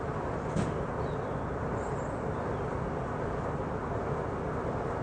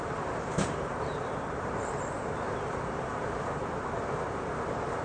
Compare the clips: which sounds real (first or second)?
first